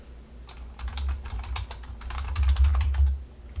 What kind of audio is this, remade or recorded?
recorded